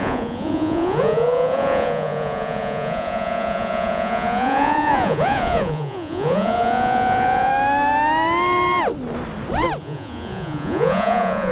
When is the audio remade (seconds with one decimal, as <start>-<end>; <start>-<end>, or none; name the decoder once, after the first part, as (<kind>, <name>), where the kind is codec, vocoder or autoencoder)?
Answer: 0.0-7.5 (vocoder, Vocos); 9.8-11.5